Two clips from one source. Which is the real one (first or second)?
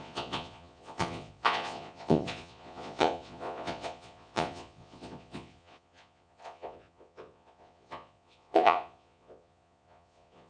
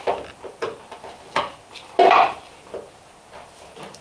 second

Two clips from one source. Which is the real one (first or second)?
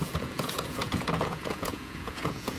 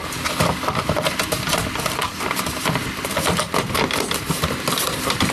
second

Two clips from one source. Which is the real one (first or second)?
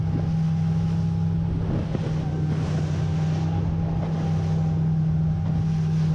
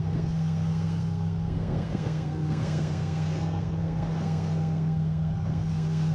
first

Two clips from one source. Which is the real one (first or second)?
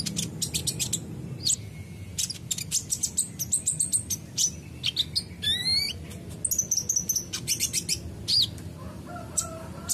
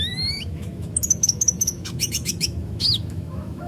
first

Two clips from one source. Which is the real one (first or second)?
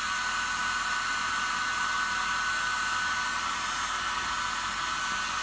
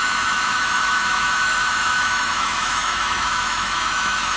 first